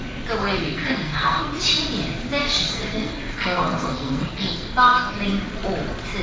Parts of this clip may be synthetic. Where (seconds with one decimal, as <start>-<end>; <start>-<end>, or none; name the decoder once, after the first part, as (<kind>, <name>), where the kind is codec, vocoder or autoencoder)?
0.4-1.5 (codec, SNAC); 2.4-5.1